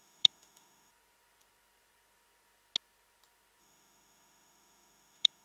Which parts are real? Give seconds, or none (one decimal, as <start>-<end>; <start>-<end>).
0.9-3.6